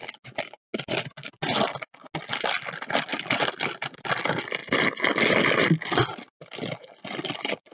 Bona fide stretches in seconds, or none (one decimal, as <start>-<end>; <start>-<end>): 0.0-7.7